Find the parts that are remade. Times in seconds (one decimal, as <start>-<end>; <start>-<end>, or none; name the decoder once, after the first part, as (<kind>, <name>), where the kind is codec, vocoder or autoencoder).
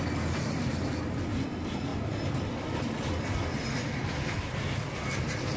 none